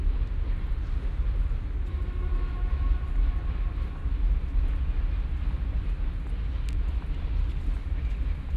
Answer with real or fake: real